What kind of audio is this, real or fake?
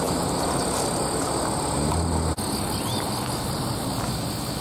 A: real